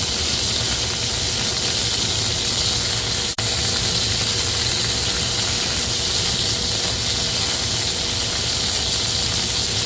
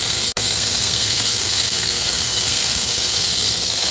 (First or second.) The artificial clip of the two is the second